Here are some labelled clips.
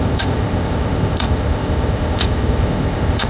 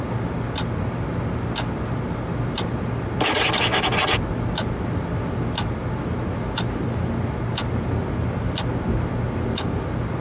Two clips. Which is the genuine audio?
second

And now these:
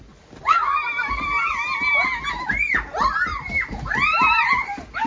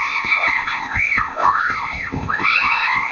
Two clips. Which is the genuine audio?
first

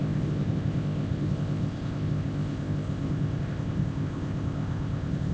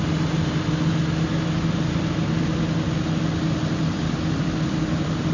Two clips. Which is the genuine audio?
second